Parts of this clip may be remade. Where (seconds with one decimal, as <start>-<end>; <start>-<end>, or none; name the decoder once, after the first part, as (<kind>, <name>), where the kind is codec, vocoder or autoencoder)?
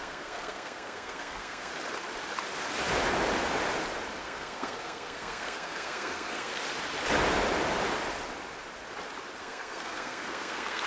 0.0-1.7 (codec, SNAC); 4.2-6.5; 9.4-10.9